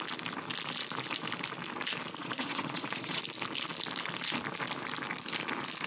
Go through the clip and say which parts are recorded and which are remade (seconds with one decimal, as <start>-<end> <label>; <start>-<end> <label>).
0.0-2.2 recorded; 2.2-3.2 remade; 3.2-5.9 recorded